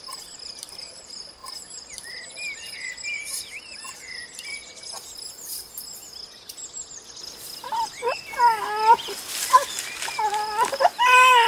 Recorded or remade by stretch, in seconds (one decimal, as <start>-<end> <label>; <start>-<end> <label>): 0.0-4.6 remade; 4.6-9.5 recorded; 9.5-11.5 remade